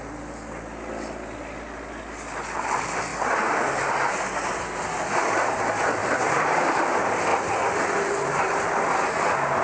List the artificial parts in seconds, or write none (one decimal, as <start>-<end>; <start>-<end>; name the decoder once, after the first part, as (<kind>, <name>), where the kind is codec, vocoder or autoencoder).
6.0-6.8 (vocoder, BigVGAN v2)